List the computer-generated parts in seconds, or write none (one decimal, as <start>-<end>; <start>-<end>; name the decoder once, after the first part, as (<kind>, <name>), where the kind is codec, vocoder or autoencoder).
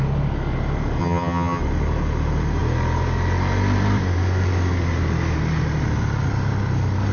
1.0-1.6 (vocoder, HiFi-GAN)